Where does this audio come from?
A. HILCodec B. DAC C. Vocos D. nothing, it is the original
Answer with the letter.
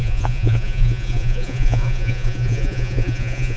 C